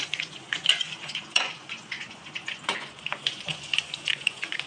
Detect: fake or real fake